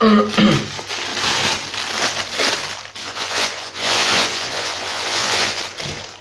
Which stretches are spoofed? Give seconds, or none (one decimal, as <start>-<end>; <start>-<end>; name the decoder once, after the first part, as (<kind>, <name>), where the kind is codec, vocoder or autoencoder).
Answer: 3.0-5.6 (vocoder, Vocos)